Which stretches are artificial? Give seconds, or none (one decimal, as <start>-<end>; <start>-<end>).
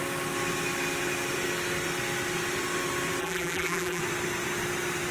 3.2-4.0